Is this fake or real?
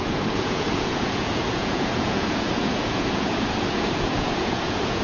fake